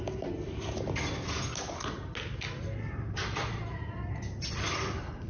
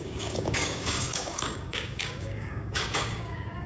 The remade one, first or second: second